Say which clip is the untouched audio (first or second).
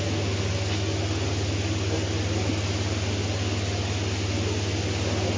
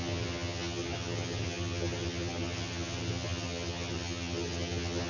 first